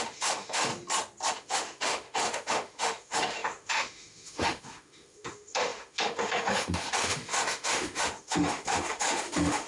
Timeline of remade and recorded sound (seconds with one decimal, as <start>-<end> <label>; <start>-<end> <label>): 0.0-0.7 remade; 0.7-1.3 recorded; 1.3-9.7 remade

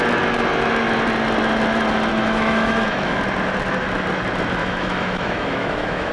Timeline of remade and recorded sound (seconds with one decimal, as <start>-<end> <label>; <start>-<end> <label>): 0.0-2.1 recorded; 2.1-3.2 remade; 3.2-4.6 recorded; 4.6-6.1 remade

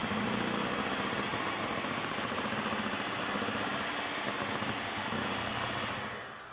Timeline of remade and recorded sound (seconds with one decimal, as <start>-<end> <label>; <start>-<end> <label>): 0.0-1.3 recorded; 1.3-3.9 remade; 3.9-6.5 recorded

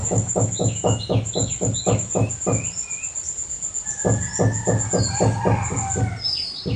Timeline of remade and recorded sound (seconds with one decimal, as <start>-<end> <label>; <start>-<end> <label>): 0.0-2.3 remade; 2.3-6.8 recorded

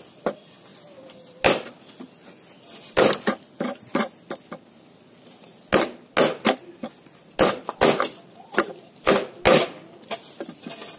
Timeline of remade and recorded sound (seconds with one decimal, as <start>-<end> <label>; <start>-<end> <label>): 0.0-11.0 recorded